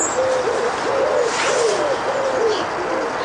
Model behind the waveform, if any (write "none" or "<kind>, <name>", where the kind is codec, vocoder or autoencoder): none